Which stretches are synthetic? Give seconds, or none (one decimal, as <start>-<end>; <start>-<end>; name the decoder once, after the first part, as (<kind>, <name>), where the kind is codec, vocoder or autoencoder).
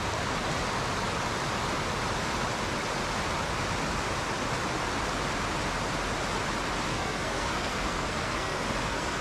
6.9-9.2 (codec, SNAC)